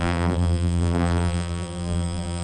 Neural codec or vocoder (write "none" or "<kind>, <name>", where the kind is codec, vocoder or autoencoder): vocoder, BigVGAN v2